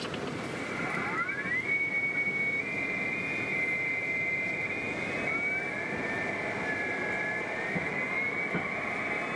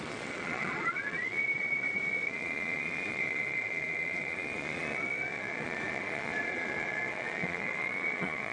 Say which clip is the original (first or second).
first